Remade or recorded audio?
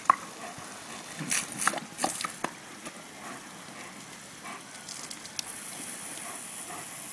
recorded